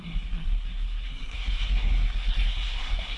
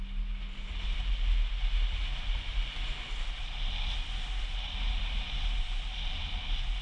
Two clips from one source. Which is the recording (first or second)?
second